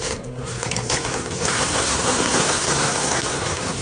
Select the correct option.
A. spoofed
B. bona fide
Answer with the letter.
A